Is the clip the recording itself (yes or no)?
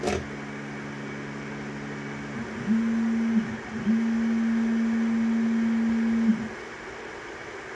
yes